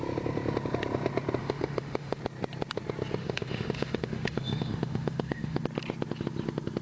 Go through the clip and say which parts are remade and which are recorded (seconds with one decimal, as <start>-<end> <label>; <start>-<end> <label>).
0.0-1.4 recorded; 1.4-2.2 remade; 2.2-3.2 recorded; 3.2-5.6 remade; 5.6-6.8 recorded